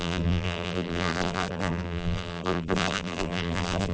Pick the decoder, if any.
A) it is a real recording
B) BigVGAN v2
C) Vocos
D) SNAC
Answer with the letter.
B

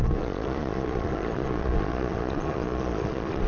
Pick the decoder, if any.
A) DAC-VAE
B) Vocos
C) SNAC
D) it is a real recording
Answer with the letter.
B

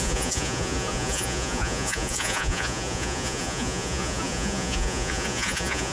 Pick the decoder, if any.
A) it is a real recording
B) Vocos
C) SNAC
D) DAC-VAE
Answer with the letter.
B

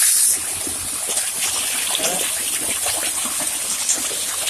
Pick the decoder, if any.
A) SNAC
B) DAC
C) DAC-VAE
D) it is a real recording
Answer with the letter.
D